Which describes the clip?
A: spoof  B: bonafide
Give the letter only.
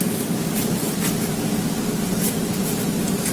B